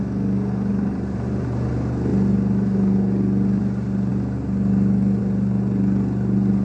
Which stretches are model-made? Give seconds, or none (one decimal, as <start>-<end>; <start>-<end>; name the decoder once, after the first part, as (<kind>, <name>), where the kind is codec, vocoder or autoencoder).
0.7-1.7 (vocoder, BigVGAN v2)